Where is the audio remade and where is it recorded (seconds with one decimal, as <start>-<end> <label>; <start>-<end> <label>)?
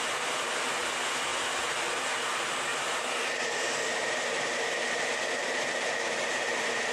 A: 0.0-1.3 recorded; 1.3-2.2 remade; 2.2-2.7 recorded; 2.7-6.9 remade